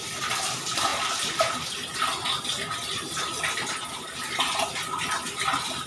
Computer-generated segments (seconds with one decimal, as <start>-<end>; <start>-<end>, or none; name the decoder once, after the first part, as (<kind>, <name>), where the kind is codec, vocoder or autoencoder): none